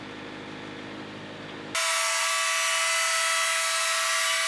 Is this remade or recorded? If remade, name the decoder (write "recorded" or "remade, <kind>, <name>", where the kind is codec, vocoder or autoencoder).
recorded